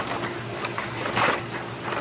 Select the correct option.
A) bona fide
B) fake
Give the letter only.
A